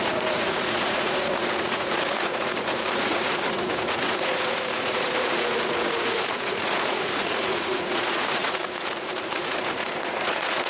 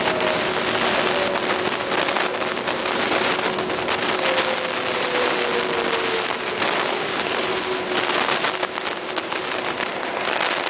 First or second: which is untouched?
second